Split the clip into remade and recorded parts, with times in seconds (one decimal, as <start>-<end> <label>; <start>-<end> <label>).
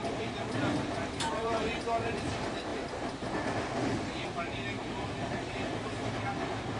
0.0-2.3 remade; 2.3-2.7 recorded; 2.7-4.1 remade; 4.1-4.8 recorded; 4.8-6.1 remade; 6.1-6.8 recorded